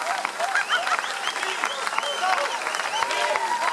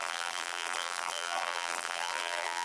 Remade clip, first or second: second